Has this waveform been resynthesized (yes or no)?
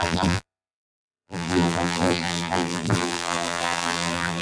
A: yes